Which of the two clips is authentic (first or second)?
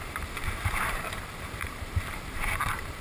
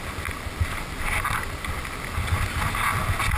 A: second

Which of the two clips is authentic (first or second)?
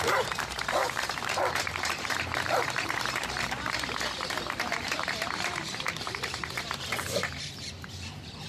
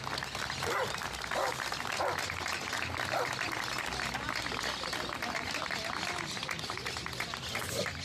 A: second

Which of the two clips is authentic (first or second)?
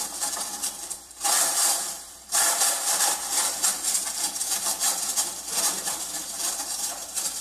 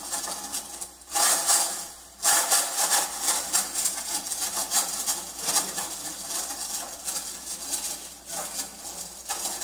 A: second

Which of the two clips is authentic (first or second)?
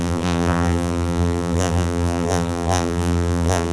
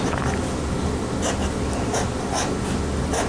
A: second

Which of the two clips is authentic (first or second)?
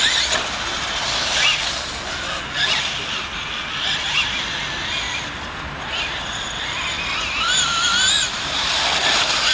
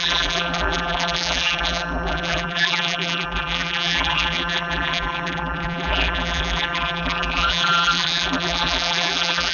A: first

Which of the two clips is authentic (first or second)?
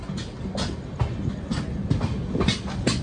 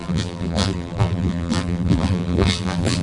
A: first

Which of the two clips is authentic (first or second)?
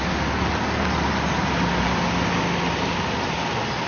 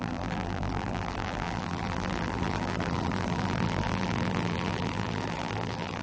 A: first